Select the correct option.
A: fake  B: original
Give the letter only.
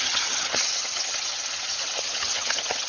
A